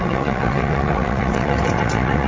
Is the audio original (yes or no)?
no